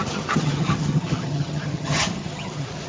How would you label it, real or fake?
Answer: fake